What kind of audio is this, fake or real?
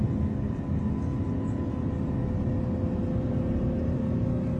real